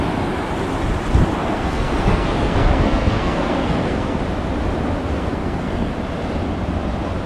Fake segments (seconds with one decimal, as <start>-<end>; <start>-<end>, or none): 1.4-4.2; 5.1-5.9